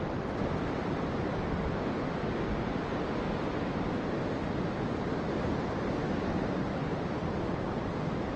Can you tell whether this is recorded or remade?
recorded